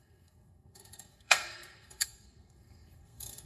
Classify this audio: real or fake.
fake